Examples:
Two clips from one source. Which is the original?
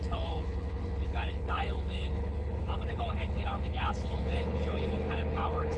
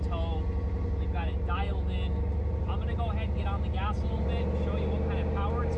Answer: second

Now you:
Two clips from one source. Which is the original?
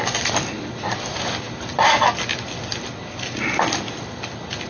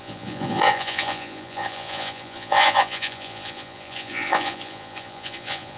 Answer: first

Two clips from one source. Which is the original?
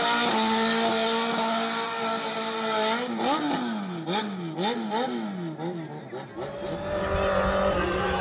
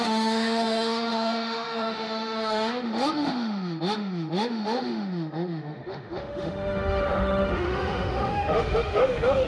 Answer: first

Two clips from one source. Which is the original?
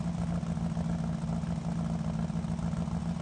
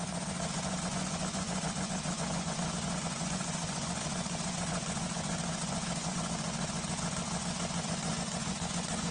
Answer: first